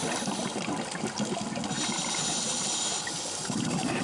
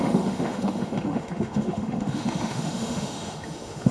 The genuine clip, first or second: first